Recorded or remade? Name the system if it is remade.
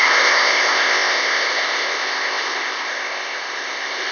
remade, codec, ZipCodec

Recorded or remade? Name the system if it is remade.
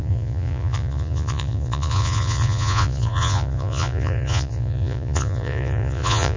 remade, vocoder, Vocos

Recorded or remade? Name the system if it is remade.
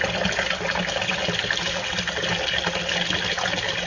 recorded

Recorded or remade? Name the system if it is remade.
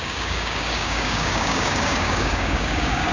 remade, codec, DAC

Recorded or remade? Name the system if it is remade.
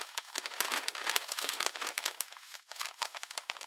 remade, autoencoder, DAC-VAE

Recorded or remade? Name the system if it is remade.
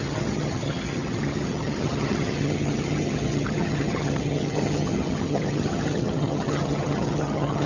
remade, vocoder, HiFi-GAN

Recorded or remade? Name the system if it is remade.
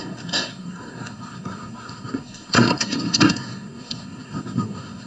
remade, codec, SNAC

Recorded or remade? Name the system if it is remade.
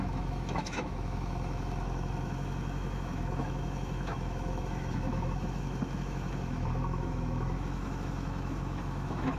remade, autoencoder, DAC-VAE